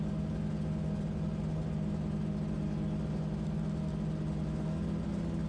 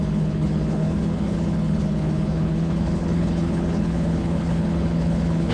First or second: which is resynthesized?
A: second